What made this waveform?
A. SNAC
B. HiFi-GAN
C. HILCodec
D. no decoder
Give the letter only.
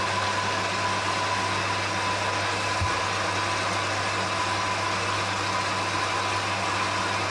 D